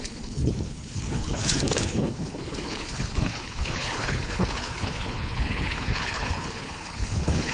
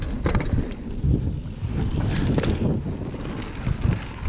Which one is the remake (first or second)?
first